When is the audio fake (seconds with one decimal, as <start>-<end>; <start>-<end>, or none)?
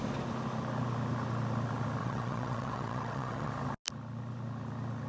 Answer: 2.0-3.5